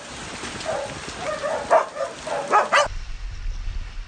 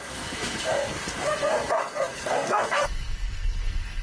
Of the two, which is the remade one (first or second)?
second